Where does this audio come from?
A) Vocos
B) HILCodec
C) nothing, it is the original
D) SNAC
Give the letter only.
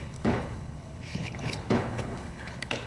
B